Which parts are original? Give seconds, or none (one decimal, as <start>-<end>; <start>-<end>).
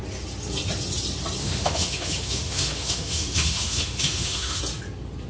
0.0-1.4; 4.6-5.3